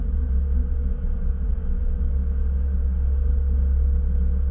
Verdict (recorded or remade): recorded